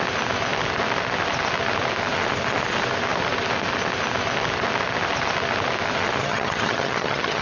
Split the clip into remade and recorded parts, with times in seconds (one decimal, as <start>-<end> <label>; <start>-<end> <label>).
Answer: 0.0-6.2 recorded; 6.2-7.4 remade